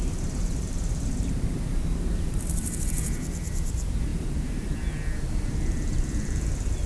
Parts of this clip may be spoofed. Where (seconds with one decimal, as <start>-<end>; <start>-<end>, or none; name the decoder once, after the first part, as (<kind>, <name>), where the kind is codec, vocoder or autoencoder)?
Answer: 0.0-6.9 (vocoder, BigVGAN v2)